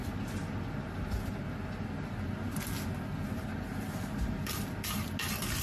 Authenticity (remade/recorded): recorded